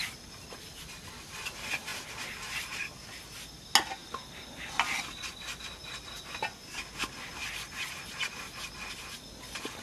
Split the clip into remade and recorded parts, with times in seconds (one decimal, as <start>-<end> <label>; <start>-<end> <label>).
0.0-9.8 recorded